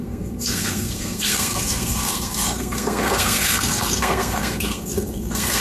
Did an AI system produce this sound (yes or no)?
yes